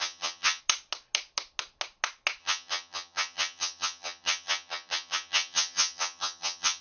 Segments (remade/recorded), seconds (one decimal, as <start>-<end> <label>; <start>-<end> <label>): 0.0-0.6 remade; 0.6-2.4 recorded; 2.4-6.8 remade